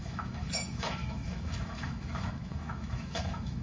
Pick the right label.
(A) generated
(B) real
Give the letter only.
A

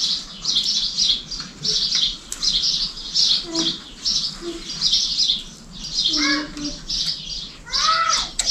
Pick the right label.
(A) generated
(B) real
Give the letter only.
B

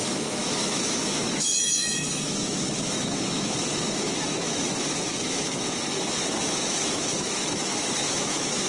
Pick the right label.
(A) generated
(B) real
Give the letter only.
A